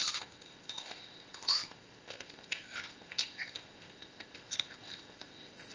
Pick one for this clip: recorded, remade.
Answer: remade